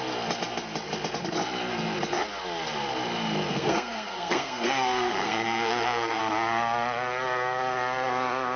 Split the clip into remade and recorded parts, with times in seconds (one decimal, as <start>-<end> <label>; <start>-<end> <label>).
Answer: 0.0-3.5 recorded; 3.5-6.2 remade; 6.2-8.6 recorded